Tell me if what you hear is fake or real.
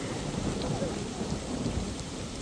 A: fake